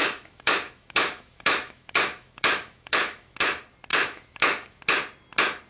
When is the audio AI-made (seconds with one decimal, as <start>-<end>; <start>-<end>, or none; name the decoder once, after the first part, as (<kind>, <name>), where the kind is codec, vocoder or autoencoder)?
0.0-3.4 (autoencoder, DAC-VAE); 3.9-4.8